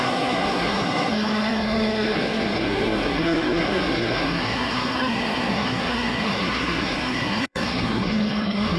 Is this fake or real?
fake